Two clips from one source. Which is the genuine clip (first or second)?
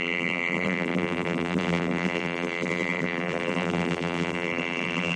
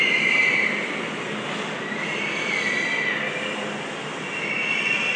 second